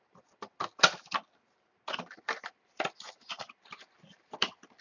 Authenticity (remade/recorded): recorded